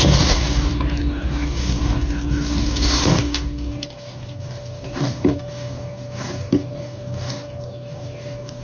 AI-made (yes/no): yes